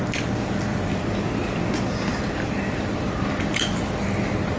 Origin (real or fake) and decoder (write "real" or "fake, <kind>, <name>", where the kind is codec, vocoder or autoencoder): real